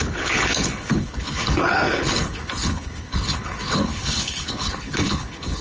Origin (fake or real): fake